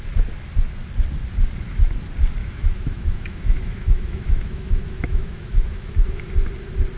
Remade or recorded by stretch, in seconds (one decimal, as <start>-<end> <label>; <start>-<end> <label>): 0.0-2.4 recorded; 2.4-6.2 remade; 6.2-7.0 recorded